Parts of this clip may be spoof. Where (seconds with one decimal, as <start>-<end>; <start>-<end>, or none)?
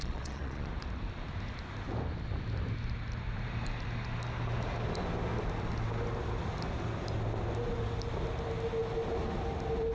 0.0-0.7